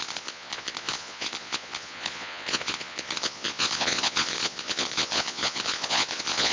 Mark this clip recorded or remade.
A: remade